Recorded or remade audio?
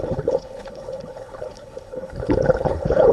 remade